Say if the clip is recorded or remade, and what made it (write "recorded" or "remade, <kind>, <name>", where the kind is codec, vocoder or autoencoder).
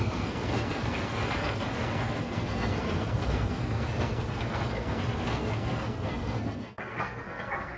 remade, codec, SNAC